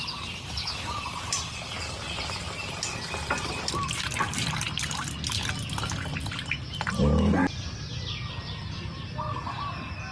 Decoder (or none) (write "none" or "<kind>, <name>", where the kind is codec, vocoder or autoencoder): none